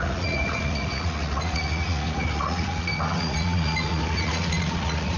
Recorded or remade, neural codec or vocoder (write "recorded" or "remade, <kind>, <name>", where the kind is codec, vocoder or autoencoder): remade, vocoder, Vocos